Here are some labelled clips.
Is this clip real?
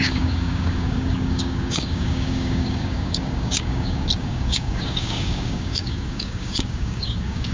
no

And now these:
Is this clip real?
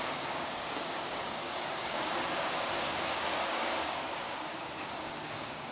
no